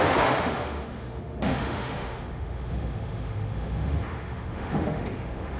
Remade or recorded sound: remade